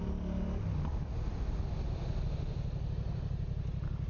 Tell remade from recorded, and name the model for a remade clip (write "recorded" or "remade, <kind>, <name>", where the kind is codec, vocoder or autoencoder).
recorded